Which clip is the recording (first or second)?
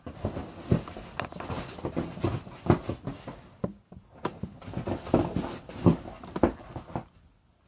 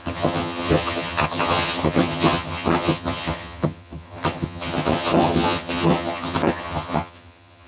first